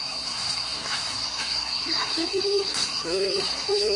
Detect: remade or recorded remade